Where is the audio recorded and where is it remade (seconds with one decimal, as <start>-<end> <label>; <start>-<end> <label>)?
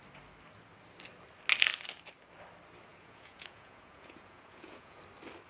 0.0-2.9 recorded; 2.9-5.0 remade; 5.0-5.5 recorded